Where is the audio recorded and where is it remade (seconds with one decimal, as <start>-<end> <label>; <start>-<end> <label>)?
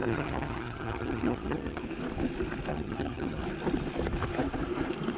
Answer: 0.0-1.8 remade; 1.8-2.7 recorded; 2.7-3.4 remade; 3.4-5.2 recorded